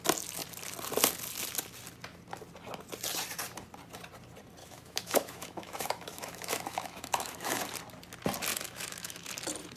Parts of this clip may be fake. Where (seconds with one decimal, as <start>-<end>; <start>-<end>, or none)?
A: 4.6-7.6; 8.5-9.3